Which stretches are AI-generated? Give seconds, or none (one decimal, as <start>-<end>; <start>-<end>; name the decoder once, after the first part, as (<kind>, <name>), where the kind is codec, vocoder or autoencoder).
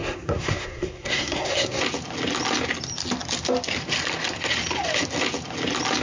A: 0.0-1.8 (codec, SNAC)